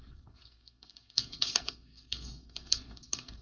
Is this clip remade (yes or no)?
yes